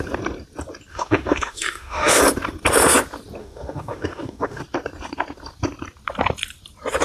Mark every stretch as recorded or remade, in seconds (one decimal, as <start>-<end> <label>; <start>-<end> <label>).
0.0-0.9 recorded; 0.9-2.2 remade; 2.2-3.4 recorded; 3.4-4.6 remade; 4.6-7.0 recorded